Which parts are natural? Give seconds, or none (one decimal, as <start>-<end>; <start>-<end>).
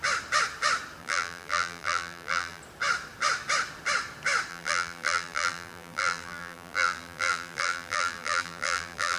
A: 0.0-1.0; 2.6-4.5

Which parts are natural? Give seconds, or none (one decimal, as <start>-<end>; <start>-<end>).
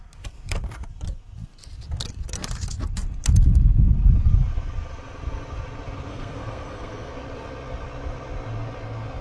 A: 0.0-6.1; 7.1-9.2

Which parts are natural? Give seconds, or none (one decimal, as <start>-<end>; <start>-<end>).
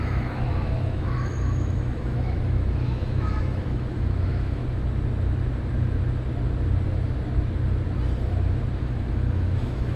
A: 4.6-8.8